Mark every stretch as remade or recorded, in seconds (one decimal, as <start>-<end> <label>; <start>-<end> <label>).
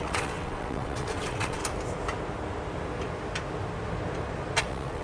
0.0-1.6 remade; 1.6-4.6 recorded; 4.6-5.0 remade